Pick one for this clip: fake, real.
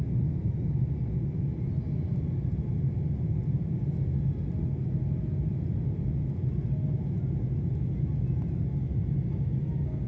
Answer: real